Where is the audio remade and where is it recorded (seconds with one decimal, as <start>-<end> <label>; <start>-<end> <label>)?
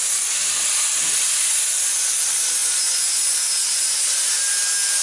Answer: 0.0-5.0 recorded